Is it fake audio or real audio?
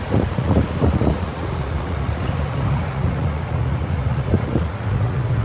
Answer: fake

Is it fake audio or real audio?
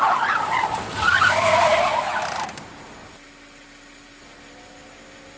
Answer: real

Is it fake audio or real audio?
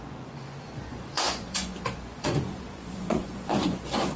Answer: fake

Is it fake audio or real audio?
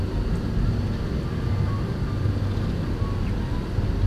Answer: real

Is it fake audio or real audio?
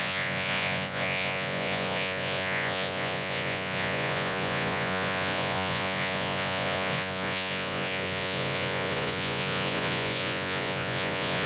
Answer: fake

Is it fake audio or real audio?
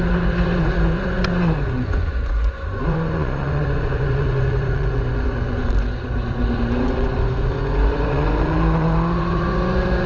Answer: fake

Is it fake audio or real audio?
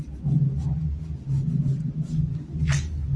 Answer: real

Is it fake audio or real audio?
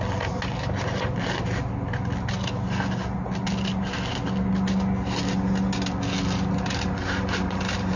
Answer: real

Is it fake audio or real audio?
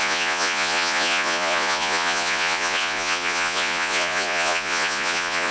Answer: fake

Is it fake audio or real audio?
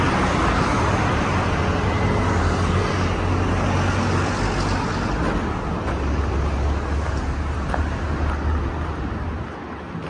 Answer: real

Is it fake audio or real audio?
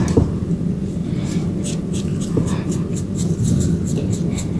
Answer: real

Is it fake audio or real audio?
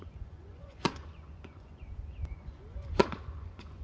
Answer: fake